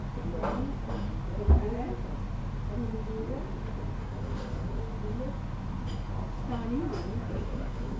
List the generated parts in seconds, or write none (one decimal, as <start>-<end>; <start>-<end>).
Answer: 4.0-4.8; 7.3-8.0